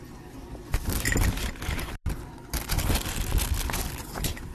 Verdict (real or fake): real